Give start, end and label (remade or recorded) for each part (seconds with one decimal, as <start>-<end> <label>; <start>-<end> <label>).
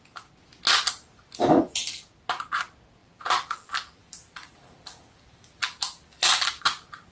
0.0-1.4 recorded; 1.4-2.0 remade; 2.0-3.0 recorded; 3.0-6.6 remade; 6.6-7.1 recorded